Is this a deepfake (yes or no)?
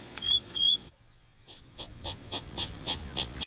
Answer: yes